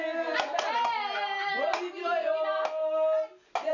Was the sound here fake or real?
real